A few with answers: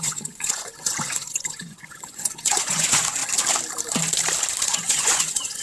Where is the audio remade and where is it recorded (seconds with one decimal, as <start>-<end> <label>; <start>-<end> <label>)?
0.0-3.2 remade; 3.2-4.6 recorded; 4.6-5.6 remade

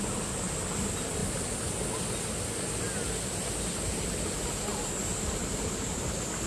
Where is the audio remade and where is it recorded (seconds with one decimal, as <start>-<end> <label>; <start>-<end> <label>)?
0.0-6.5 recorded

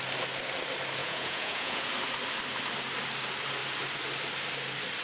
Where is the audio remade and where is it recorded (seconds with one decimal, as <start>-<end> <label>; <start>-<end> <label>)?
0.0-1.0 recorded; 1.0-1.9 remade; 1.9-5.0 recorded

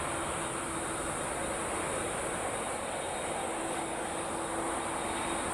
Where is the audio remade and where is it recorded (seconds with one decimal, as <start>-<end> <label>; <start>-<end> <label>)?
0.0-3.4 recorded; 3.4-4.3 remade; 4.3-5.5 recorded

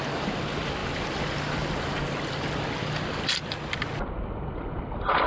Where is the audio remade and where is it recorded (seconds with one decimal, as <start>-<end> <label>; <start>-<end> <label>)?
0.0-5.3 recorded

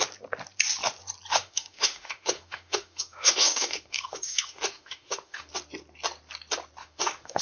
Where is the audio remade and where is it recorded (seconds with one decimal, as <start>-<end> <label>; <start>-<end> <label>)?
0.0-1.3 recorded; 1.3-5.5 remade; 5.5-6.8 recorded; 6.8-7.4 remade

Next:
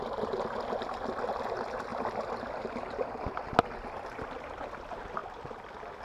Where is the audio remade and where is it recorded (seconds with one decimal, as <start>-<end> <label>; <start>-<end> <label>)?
0.0-6.0 recorded

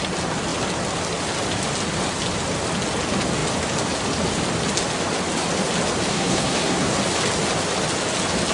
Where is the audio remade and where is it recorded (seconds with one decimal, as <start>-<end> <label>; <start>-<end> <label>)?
0.0-6.1 recorded; 6.1-6.9 remade; 6.9-8.5 recorded